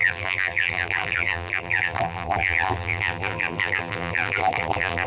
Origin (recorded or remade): remade